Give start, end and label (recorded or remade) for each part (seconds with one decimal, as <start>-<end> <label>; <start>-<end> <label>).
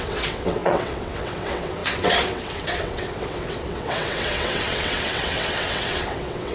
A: 0.0-6.5 remade